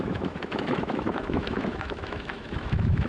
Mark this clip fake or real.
fake